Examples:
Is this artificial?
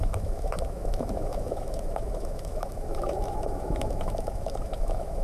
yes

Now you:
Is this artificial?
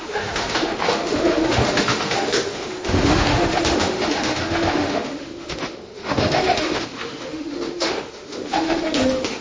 yes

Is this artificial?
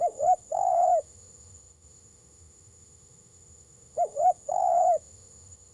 yes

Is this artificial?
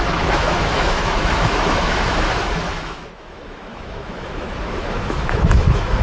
yes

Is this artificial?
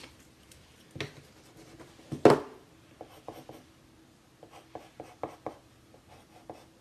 no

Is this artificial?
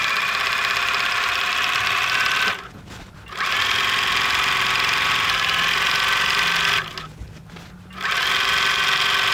no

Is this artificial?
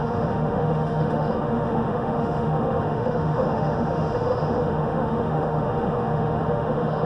yes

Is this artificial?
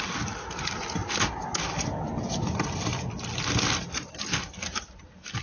no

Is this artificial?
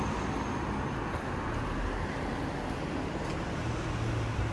no